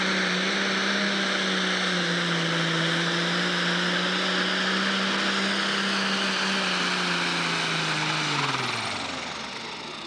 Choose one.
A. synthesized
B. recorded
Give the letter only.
B